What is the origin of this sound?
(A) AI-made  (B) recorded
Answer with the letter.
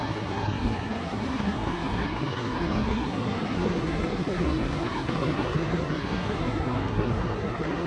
A